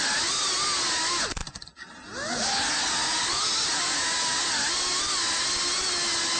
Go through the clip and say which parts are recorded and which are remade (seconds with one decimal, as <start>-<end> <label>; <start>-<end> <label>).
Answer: 0.0-6.4 recorded